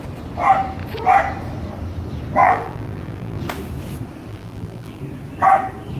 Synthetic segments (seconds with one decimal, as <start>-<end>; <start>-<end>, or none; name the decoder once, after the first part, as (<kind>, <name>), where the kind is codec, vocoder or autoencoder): 2.4-3.4 (vocoder, BigVGAN v2); 4.3-5.0